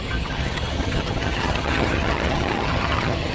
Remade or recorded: remade